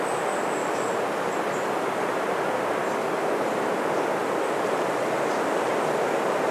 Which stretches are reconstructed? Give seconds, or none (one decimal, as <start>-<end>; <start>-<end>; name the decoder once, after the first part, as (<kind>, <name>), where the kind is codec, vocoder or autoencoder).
4.2-4.9 (vocoder, BigVGAN v2)